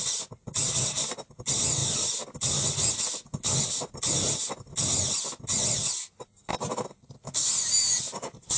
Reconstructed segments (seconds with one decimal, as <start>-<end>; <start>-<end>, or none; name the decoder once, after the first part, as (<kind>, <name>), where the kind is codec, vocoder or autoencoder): none